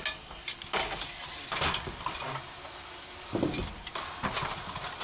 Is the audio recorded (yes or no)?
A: yes